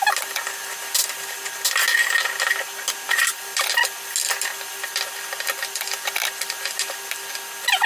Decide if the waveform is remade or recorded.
recorded